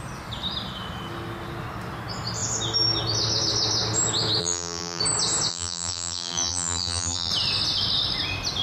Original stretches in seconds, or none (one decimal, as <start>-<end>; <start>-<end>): 0.0-4.4; 5.0-5.5; 7.3-8.6